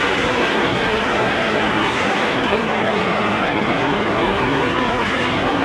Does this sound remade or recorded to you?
remade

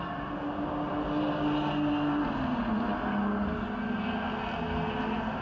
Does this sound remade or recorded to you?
recorded